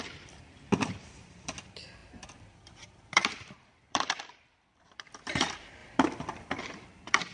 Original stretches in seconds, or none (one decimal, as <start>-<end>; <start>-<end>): none